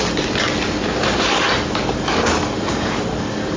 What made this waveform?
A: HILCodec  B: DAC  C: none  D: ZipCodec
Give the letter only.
C